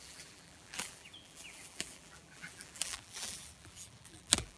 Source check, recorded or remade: remade